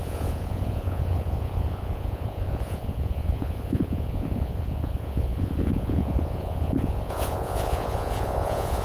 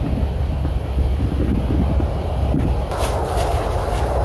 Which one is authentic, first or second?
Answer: second